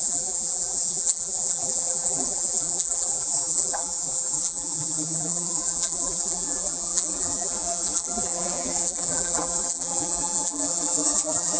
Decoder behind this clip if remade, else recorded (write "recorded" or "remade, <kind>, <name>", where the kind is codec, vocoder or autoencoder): remade, vocoder, BigVGAN v2